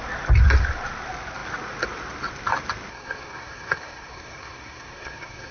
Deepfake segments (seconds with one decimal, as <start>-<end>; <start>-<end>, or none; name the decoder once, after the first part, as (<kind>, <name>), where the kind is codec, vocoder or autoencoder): 2.9-5.5 (codec, SNAC)